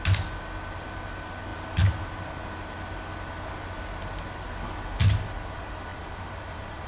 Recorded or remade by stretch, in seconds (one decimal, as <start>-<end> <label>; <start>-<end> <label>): 0.0-5.9 recorded; 5.9-6.9 remade